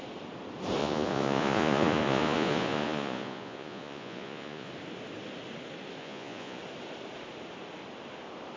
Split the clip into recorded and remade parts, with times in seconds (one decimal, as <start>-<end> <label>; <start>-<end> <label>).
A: 0.0-0.8 recorded; 0.8-4.7 remade; 4.7-6.0 recorded; 6.0-6.6 remade; 6.6-8.6 recorded